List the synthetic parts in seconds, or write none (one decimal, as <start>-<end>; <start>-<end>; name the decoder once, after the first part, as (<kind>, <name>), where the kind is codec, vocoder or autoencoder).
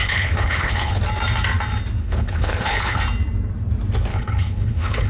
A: 0.0-1.0 (codec, HILCodec); 2.0-3.0; 4.1-5.1